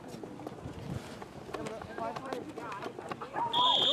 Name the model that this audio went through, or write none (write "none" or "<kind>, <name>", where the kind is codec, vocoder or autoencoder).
none